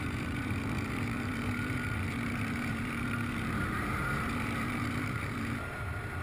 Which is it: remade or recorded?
remade